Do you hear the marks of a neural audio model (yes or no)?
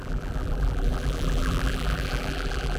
yes